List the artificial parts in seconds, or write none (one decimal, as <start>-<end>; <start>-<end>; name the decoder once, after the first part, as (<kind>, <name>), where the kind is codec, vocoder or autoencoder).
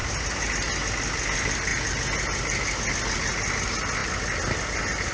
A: 0.0-0.5 (vocoder, BigVGAN v2)